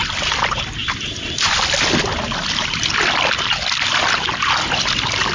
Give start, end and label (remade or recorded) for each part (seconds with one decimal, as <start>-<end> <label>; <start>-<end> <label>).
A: 0.0-5.3 recorded